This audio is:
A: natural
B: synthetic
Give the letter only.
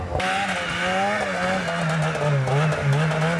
A